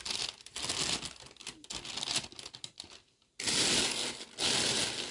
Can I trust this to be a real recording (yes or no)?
yes